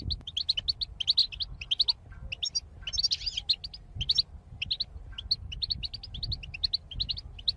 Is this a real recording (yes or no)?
yes